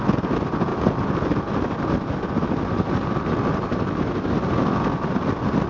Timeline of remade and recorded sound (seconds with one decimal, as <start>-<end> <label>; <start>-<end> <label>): 0.0-5.7 recorded